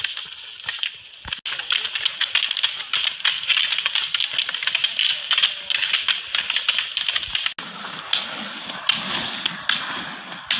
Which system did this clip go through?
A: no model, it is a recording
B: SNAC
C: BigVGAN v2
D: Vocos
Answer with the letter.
A